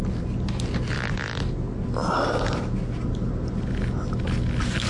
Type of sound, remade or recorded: recorded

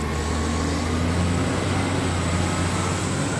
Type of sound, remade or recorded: recorded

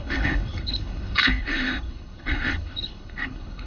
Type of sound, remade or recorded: remade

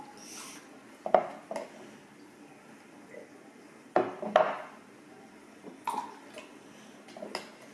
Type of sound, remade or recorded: recorded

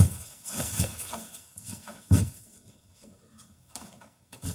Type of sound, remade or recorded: remade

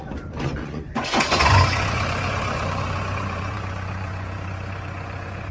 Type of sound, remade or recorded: remade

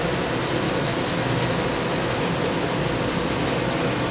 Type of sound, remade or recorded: recorded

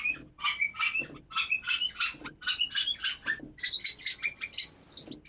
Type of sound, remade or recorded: recorded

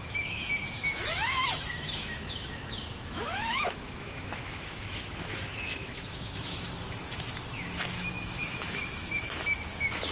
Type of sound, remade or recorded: remade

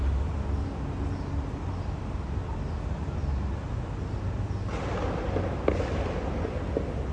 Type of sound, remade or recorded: recorded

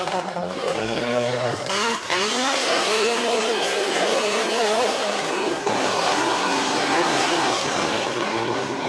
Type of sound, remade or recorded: remade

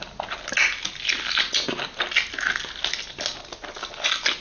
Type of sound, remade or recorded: recorded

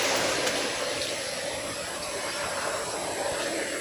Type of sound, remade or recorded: recorded